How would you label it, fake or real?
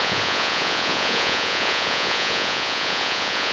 fake